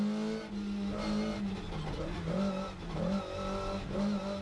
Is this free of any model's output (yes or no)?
yes